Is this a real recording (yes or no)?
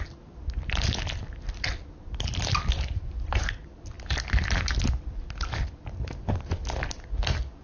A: yes